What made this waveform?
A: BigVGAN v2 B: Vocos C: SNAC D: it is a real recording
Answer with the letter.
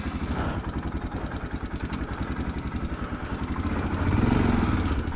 D